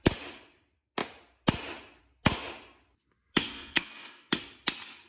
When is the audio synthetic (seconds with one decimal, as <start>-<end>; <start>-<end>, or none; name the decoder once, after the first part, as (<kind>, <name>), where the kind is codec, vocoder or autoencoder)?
3.5-4.3 (codec, SNAC)